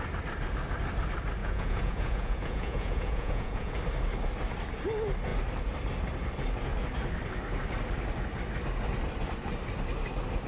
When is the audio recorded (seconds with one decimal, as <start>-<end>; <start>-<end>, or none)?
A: 0.0-1.4; 3.7-10.5